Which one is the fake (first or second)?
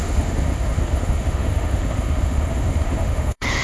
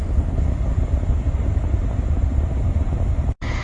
first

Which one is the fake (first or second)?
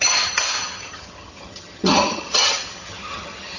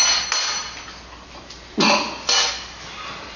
first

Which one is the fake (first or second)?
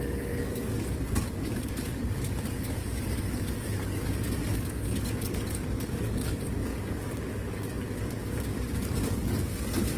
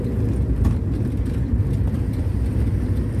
first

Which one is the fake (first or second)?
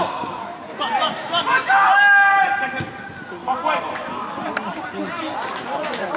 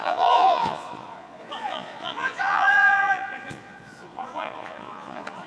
second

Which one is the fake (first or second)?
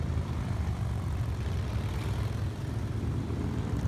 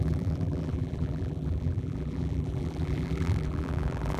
second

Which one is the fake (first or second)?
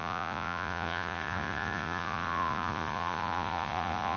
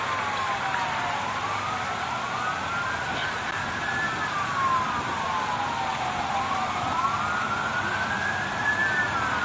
first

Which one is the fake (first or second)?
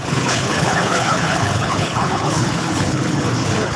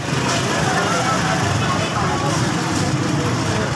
first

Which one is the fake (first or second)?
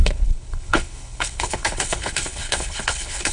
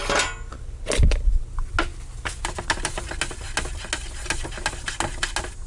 first